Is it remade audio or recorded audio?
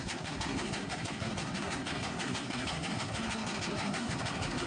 remade